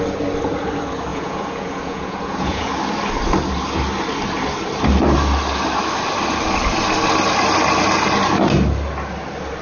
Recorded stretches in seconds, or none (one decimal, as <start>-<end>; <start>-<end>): 0.0-1.1; 2.7-9.6

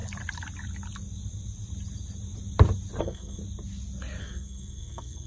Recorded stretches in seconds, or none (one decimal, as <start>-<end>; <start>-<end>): 0.0-3.0; 3.4-4.2

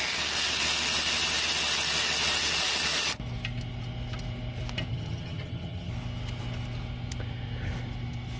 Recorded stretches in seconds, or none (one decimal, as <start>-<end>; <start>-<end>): 0.0-4.9; 5.9-8.4

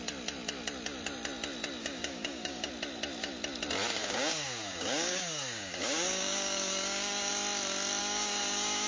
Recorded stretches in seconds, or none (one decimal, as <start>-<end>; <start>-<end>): 0.0-1.8; 2.7-4.0; 7.3-8.0

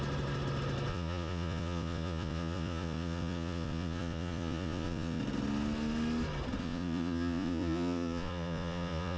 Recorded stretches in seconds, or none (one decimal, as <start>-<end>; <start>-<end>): 0.0-0.9; 5.2-6.6

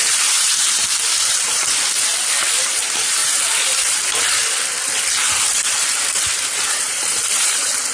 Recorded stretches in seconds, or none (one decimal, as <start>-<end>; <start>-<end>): 2.1-2.6; 4.4-5.2

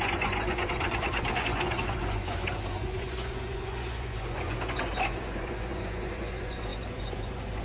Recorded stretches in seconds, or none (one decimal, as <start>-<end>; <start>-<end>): none